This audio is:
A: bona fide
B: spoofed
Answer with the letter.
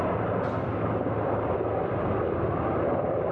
A